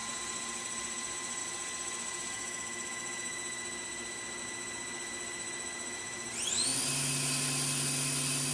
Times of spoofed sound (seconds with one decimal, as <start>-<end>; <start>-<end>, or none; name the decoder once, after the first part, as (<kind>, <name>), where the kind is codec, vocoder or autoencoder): none